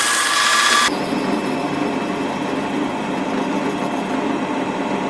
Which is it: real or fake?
real